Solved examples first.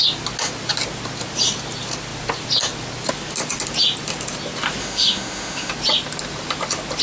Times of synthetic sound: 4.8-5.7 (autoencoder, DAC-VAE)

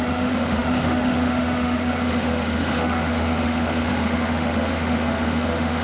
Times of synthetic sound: 0.0-5.8 (autoencoder, DAC-VAE)

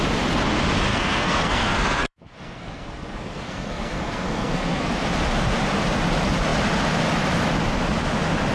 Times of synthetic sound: 0.9-4.9 (codec, SNAC)